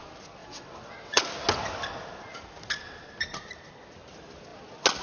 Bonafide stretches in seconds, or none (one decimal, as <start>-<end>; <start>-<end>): 0.0-0.4; 1.2-5.0